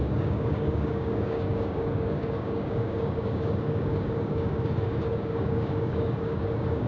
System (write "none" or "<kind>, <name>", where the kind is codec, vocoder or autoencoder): codec, DAC